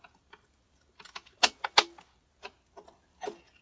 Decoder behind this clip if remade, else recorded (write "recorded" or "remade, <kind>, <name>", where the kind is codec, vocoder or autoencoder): recorded